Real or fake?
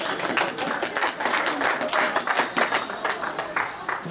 real